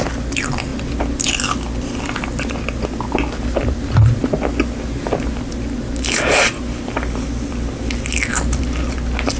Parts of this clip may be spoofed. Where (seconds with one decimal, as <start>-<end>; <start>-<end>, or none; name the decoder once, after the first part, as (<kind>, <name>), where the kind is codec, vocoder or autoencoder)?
none